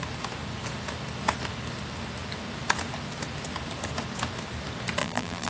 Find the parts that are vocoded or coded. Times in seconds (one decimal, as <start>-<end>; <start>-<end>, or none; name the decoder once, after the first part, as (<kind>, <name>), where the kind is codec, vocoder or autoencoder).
5.0-5.5 (vocoder, BigVGAN v2)

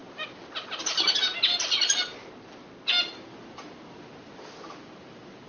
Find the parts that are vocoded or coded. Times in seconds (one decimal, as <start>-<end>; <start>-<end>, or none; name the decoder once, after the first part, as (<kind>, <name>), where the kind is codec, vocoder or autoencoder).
none

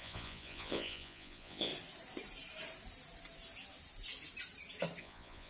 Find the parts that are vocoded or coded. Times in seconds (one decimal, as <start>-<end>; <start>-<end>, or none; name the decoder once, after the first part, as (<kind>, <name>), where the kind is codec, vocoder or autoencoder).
0.0-1.7 (vocoder, Vocos); 5.0-5.5

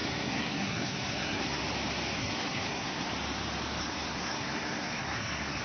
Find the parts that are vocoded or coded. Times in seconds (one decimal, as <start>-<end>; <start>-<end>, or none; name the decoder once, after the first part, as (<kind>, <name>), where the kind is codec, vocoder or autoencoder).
0.0-1.6 (codec, SNAC); 2.2-3.1; 3.8-5.6

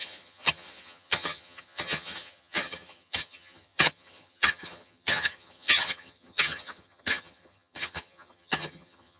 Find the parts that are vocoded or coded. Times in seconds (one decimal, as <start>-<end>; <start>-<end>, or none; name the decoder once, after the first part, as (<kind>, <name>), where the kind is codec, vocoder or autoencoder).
0.0-9.2 (vocoder, HiFi-GAN)